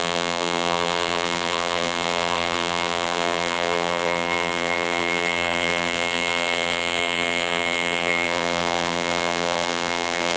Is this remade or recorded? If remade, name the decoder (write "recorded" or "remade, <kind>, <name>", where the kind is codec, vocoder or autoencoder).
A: remade, vocoder, BigVGAN v2